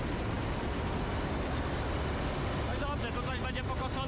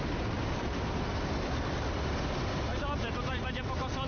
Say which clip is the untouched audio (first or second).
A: first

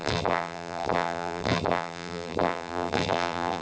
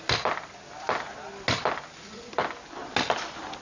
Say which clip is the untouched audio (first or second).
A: second